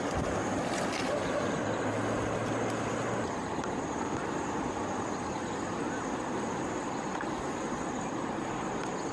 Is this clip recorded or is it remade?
recorded